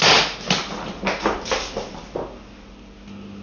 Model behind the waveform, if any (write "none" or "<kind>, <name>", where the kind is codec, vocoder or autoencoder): none